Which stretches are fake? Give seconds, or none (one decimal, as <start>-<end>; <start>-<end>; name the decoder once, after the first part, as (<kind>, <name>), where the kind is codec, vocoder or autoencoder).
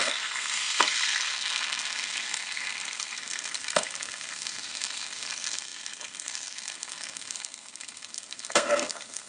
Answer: 0.0-9.3 (codec, SNAC)